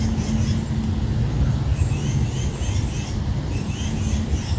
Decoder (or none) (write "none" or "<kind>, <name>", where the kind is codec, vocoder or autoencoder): none